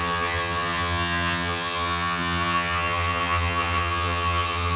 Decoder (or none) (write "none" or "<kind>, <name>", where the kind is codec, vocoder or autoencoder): vocoder, HiFi-GAN